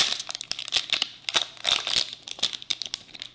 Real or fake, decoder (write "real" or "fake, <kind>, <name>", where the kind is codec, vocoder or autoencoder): real